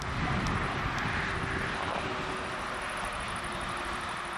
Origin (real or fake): real